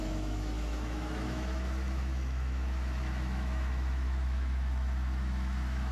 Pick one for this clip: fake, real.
fake